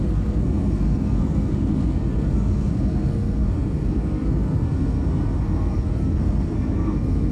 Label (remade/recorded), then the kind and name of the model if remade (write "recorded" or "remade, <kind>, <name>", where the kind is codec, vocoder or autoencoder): remade, codec, SNAC